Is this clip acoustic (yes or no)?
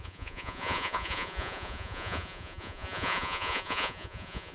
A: no